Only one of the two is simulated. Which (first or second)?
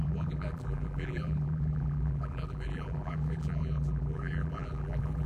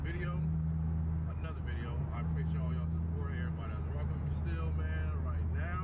first